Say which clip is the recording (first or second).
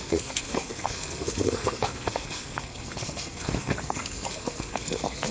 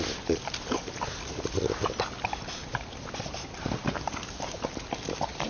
second